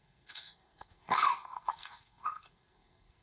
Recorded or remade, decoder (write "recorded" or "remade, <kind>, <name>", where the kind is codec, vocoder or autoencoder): remade, codec, SNAC